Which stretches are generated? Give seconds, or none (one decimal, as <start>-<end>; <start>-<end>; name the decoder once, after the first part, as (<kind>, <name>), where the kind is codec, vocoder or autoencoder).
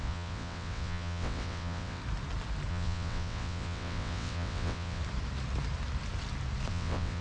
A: 0.0-2.0 (vocoder, WaveNeXt); 2.7-5.0; 6.7-7.2